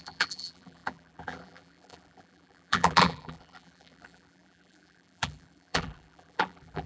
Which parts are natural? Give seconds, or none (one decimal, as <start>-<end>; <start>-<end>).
none